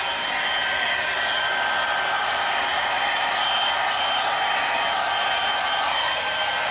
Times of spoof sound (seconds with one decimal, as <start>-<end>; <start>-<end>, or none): none

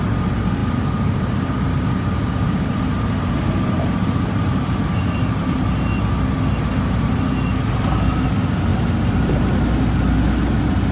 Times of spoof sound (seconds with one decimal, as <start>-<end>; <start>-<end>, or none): 0.6-5.7; 8.7-9.4

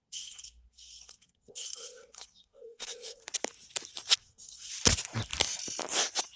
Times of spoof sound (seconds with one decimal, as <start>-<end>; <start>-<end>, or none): 0.0-3.2; 4.2-4.7